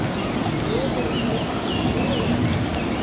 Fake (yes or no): no